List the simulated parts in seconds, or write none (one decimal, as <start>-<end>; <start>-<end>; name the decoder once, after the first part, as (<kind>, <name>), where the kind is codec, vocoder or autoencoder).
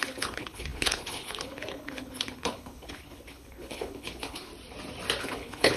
0.0-4.5 (codec, HILCodec); 5.2-5.8